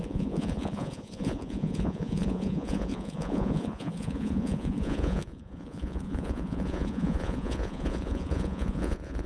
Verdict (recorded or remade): remade